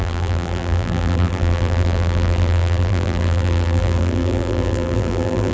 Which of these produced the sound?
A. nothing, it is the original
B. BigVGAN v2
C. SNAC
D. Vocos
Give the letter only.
B